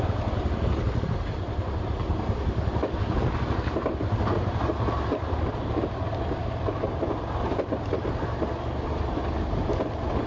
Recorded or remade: recorded